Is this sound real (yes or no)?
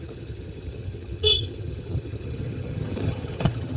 no